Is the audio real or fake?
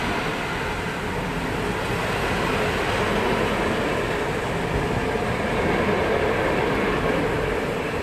real